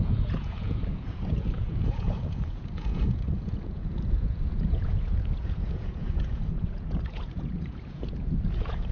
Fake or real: fake